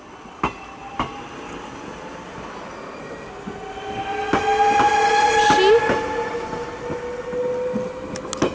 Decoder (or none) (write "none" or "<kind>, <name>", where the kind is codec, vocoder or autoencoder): none